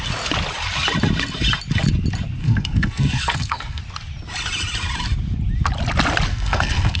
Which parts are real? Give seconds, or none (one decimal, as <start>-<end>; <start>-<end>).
0.0-2.4; 3.8-6.3